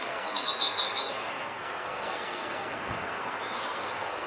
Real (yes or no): no